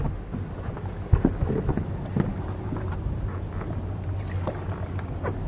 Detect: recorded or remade recorded